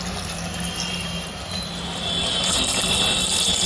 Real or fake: real